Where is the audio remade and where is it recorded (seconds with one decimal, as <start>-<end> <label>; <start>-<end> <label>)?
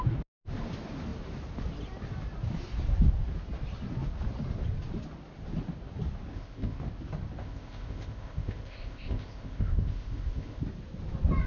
0.0-6.3 recorded; 6.3-6.8 remade; 6.8-7.4 recorded; 7.4-10.6 remade; 10.6-11.5 recorded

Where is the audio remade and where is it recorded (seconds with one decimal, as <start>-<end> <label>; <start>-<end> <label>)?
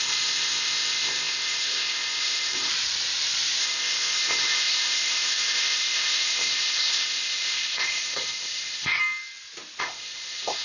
0.0-2.7 remade; 2.7-3.6 recorded; 3.6-9.0 remade; 9.0-9.8 recorded; 9.8-10.6 remade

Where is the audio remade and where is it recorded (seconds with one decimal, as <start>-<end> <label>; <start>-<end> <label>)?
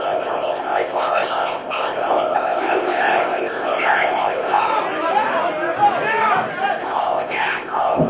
0.0-4.7 remade; 4.7-6.8 recorded; 6.8-8.1 remade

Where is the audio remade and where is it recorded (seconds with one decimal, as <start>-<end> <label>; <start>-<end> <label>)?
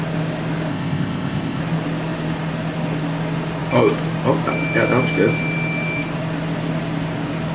0.0-0.7 recorded; 0.7-1.6 remade; 1.6-7.5 recorded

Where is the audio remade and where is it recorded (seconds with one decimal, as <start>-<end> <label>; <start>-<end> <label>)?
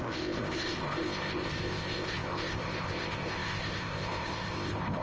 0.0-5.0 remade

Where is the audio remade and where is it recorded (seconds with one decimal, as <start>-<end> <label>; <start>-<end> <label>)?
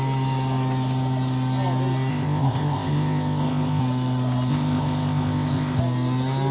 0.0-2.1 recorded; 2.1-3.8 remade; 3.8-4.5 recorded; 4.5-5.8 remade; 5.8-6.5 recorded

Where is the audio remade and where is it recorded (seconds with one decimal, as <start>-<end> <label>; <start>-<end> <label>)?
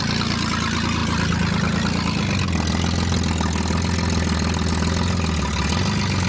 0.0-6.3 recorded